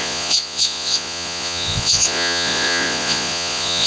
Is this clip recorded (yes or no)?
no